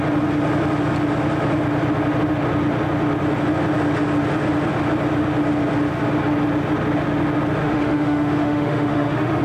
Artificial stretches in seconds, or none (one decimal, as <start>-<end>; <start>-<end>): 7.6-9.4